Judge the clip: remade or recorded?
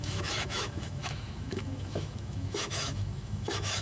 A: remade